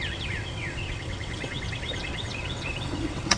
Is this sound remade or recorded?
remade